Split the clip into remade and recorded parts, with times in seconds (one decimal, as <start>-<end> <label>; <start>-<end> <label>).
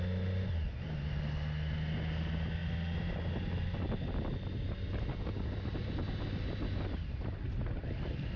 0.0-8.4 recorded